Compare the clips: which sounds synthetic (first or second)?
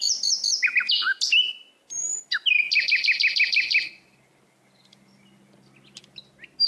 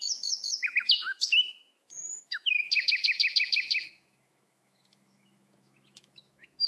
second